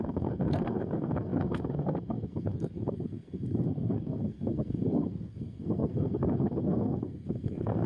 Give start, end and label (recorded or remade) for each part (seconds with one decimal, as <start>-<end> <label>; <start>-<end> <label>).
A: 0.0-7.9 remade